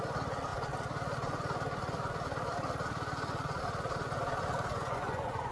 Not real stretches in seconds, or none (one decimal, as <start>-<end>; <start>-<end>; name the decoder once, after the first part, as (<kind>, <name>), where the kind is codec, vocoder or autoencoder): 4.7-5.5 (vocoder, Vocos)